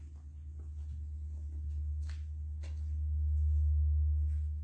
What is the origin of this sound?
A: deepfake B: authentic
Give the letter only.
B